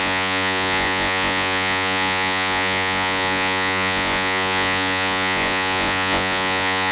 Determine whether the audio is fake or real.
fake